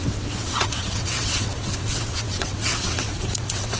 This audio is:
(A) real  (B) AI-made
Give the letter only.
B